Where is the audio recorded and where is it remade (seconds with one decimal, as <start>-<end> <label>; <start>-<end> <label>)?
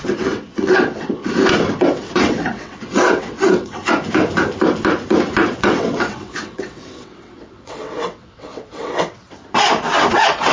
0.0-1.2 remade; 1.2-1.8 recorded; 1.8-3.8 remade; 3.8-5.5 recorded; 5.5-9.4 remade; 9.4-10.1 recorded; 10.1-10.5 remade